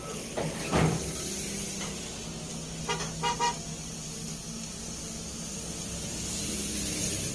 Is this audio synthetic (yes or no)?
no